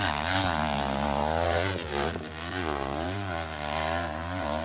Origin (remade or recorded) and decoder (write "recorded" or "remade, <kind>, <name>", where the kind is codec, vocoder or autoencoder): remade, vocoder, BigVGAN v2